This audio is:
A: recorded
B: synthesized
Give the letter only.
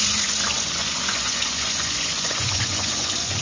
B